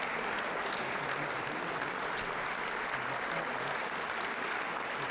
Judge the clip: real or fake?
real